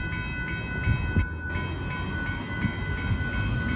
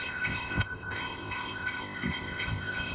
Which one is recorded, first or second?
first